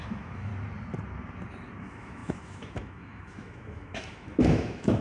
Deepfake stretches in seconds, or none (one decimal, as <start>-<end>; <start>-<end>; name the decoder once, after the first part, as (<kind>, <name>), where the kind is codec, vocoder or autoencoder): 0.0-0.5 (autoencoder, DAC-VAE); 1.8-5.0